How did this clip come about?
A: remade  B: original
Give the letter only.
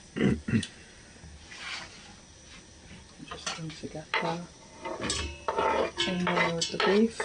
B